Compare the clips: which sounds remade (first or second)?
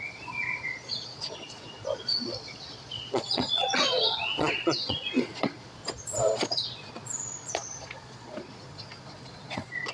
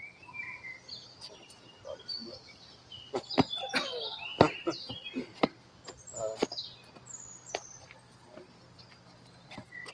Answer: first